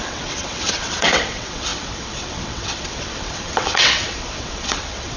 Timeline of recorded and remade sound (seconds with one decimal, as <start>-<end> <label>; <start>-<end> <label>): 0.0-5.2 remade